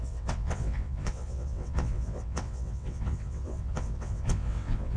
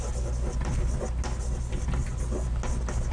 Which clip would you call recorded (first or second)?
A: second